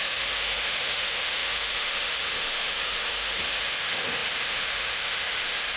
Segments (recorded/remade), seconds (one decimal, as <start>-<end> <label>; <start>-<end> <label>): 0.0-5.8 remade